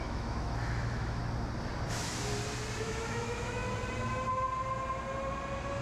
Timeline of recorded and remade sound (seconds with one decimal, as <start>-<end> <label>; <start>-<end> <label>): 0.0-1.2 remade; 1.2-1.9 recorded; 1.9-2.3 remade; 2.3-2.8 recorded; 2.8-3.6 remade; 3.6-5.8 recorded